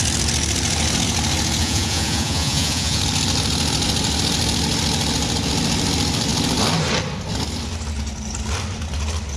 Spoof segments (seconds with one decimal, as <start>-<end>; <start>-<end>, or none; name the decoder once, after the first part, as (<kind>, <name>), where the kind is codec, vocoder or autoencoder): 1.6-3.0 (vocoder, Vocos)